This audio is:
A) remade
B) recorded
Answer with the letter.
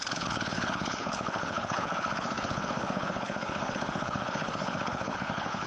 A